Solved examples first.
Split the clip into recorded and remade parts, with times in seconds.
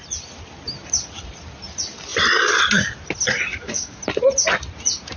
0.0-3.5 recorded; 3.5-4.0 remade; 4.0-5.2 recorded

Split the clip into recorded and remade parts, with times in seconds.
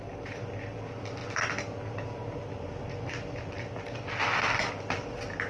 0.0-1.2 remade; 1.2-4.1 recorded; 4.1-5.5 remade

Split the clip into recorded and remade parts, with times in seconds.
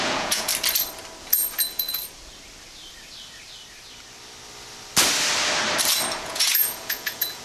0.0-0.5 remade; 0.5-1.2 recorded; 1.2-2.0 remade; 2.0-6.1 recorded; 6.1-7.4 remade